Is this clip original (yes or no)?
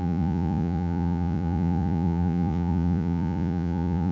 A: no